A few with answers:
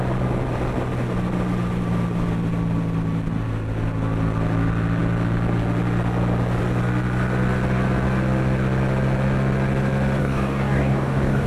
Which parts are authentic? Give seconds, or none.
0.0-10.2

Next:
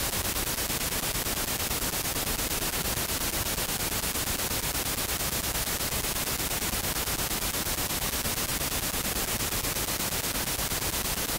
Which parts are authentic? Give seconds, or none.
0.0-11.4

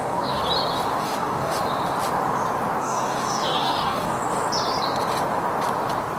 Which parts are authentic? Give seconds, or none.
0.4-1.0; 1.6-2.8; 4.2-6.2

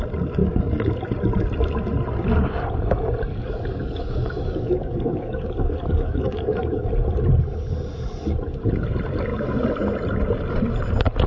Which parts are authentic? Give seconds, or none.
0.0-0.4; 0.9-3.3; 6.9-11.3